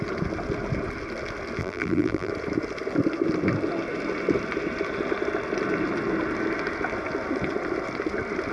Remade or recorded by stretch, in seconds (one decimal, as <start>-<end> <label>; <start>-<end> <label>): 0.0-1.6 recorded; 1.6-2.3 remade; 2.3-8.5 recorded